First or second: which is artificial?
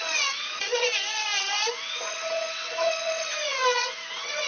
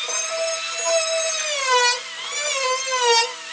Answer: first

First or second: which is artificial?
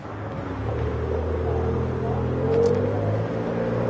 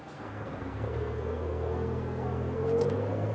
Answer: second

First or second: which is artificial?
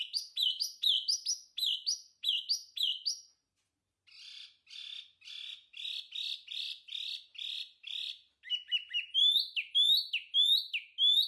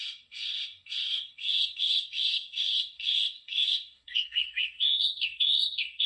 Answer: second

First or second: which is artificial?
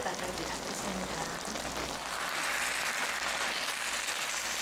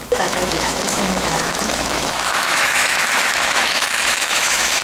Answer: second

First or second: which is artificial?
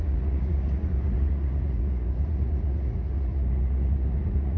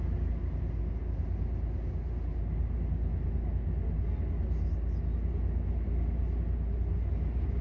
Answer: first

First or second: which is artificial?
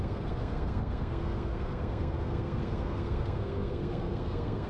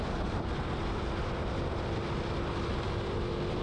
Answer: first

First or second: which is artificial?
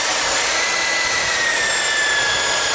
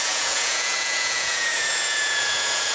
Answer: second